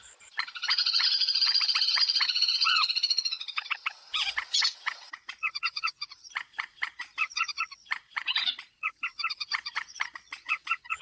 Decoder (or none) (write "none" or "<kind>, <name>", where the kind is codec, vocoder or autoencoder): vocoder, Vocos